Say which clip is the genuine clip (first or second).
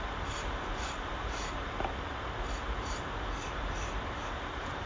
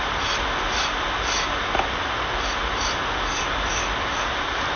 second